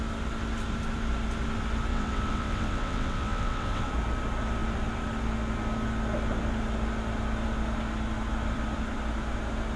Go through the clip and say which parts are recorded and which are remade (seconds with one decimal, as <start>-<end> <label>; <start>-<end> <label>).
0.0-1.9 recorded; 1.9-3.9 remade; 3.9-9.8 recorded

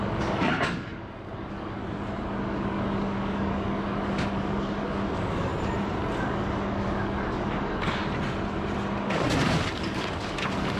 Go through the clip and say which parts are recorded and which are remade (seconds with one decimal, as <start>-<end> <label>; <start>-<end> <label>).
0.0-1.8 remade; 1.8-2.4 recorded; 2.4-5.5 remade; 5.5-6.2 recorded; 6.2-8.0 remade; 8.0-9.0 recorded; 9.0-10.8 remade

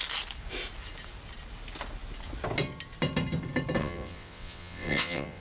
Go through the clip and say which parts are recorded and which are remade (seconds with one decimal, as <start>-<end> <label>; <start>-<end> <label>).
0.0-3.8 recorded; 3.8-5.4 remade

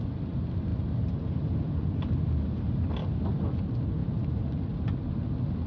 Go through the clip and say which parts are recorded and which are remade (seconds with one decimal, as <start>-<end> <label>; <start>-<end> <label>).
0.0-5.7 recorded